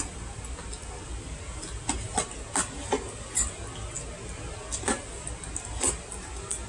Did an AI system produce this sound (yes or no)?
no